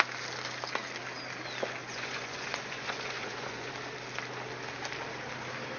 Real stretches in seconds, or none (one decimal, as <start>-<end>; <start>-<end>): 0.0-1.8; 3.7-5.8